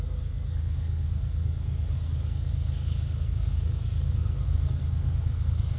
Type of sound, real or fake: fake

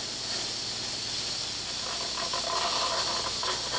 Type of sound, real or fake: real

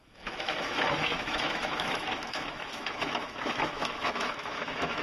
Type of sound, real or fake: fake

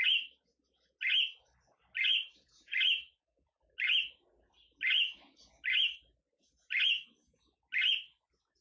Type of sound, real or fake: real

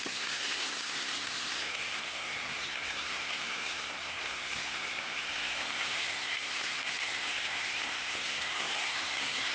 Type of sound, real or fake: fake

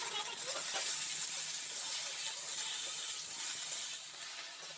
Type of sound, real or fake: real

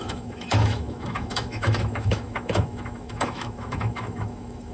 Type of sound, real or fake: fake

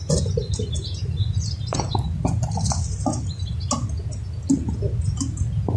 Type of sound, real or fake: real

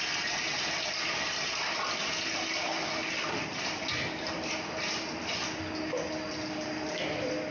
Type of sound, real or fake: real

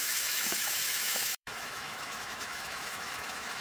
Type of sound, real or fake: fake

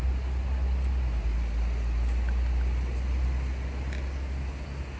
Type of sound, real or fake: real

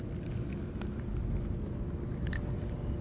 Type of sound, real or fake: real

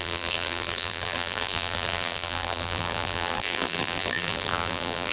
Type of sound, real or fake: fake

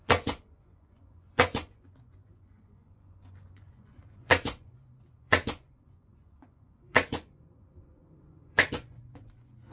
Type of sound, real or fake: fake